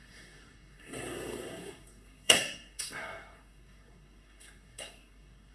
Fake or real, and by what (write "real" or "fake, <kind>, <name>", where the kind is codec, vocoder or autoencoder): fake, codec, SNAC